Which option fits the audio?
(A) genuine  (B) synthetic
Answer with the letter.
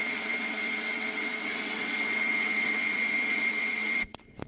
B